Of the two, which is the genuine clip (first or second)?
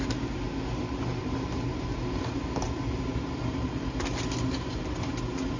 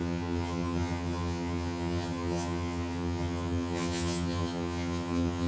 first